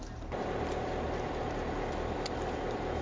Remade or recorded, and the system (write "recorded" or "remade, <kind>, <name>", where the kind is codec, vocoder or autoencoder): recorded